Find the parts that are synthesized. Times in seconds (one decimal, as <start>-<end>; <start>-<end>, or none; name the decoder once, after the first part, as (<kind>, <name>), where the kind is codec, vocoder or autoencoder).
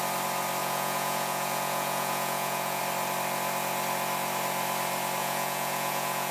0.6-2.8 (vocoder, Vocos); 5.2-6.3